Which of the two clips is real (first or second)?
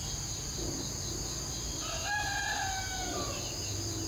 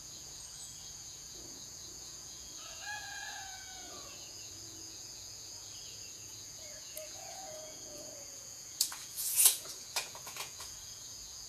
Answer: first